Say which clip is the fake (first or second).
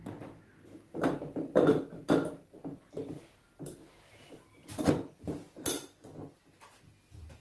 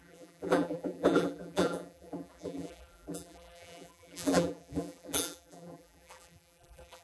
second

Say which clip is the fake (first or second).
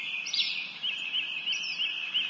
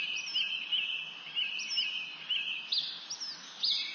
first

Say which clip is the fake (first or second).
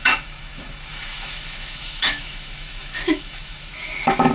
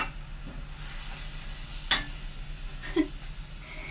first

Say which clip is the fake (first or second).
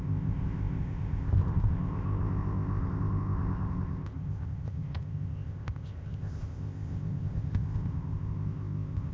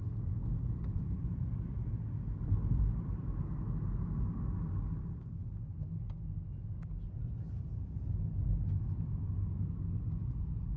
first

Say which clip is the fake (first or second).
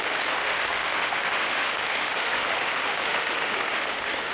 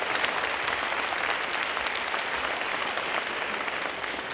first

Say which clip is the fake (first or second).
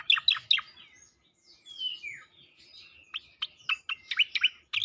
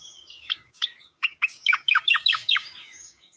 second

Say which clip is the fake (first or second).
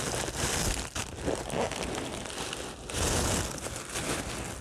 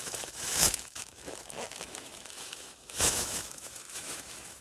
second